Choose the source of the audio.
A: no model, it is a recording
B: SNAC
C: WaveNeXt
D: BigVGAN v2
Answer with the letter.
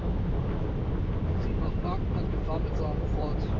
A